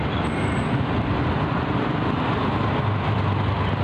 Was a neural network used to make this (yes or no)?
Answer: no